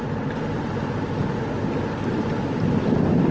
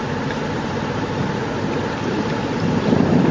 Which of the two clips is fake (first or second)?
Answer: second